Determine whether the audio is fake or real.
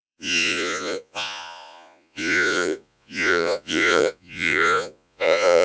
fake